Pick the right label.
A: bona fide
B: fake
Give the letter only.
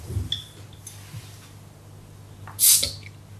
A